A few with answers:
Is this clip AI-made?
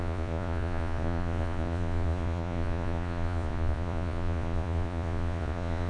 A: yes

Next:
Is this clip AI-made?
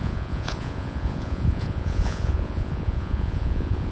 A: yes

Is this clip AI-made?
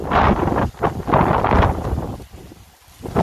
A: no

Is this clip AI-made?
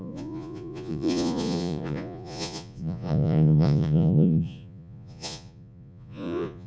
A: yes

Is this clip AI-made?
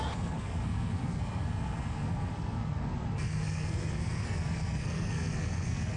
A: yes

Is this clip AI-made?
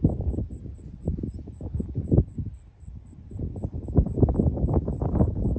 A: no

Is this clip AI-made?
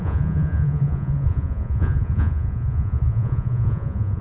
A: yes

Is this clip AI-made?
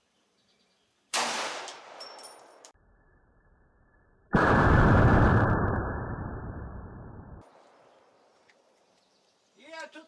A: yes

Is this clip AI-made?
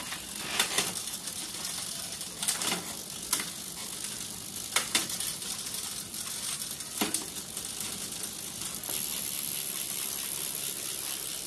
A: no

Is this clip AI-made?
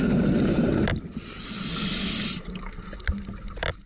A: yes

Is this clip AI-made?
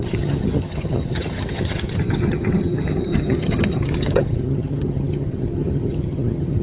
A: yes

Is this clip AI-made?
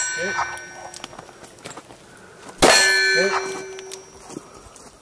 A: no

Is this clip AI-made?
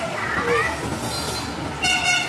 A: no